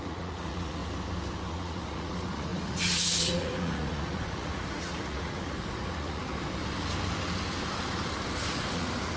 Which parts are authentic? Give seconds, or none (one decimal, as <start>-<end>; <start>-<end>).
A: 0.8-1.5; 6.3-8.7